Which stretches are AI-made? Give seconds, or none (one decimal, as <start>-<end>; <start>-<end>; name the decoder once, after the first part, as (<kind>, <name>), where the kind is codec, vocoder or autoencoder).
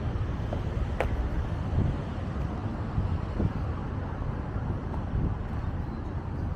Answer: none